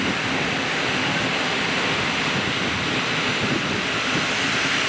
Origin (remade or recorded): recorded